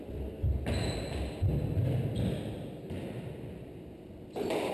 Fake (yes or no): no